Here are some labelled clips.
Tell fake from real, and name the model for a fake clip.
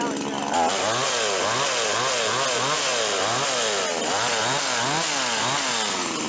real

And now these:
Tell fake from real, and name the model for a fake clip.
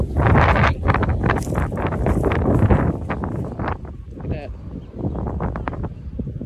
real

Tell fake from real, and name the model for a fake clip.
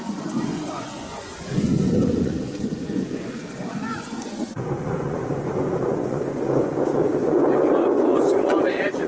fake, vocoder, Vocos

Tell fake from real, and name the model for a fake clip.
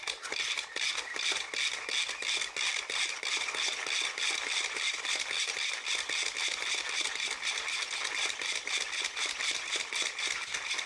real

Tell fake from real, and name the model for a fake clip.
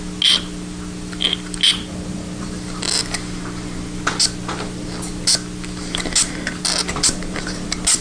real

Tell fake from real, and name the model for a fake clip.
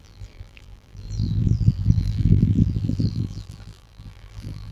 fake, vocoder, BigVGAN v2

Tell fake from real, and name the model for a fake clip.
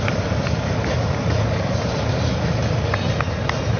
real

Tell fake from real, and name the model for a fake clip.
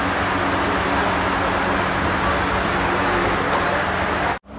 real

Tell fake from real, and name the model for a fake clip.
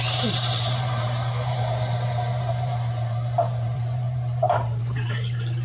fake, vocoder, BigVGAN v2